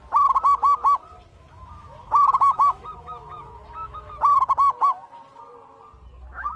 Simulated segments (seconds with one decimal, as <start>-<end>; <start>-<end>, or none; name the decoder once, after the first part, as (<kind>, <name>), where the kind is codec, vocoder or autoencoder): 1.3-4.1 (autoencoder, DAC-VAE)